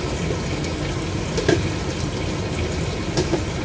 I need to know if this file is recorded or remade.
remade